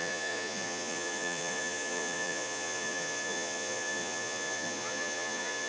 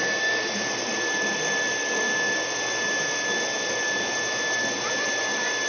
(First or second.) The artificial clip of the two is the first